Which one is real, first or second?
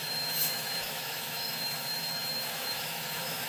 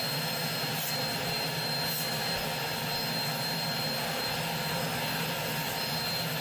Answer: second